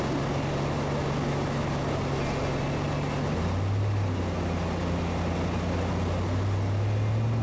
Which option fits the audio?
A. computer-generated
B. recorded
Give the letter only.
B